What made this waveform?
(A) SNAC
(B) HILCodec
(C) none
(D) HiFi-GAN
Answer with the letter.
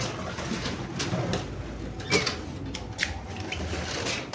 C